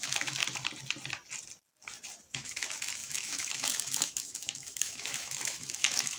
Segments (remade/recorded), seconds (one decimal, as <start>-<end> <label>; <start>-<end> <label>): 0.0-0.4 remade; 0.4-2.3 recorded; 2.3-6.2 remade